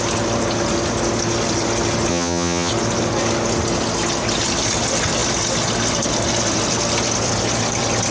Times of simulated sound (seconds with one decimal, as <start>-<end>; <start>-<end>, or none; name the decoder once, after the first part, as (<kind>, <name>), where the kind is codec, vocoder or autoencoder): 2.1-2.7 (vocoder, HiFi-GAN)